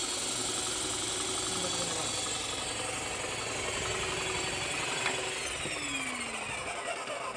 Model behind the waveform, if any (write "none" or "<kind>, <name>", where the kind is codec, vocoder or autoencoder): none